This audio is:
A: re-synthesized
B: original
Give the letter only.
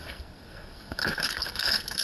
A